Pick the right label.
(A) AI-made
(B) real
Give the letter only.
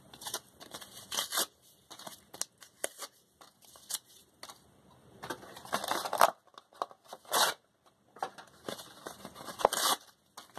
B